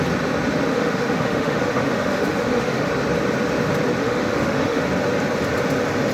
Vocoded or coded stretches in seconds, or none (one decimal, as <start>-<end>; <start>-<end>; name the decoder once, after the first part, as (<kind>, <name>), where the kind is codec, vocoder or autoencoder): 0.7-2.9 (autoencoder, DAC-VAE); 4.0-4.8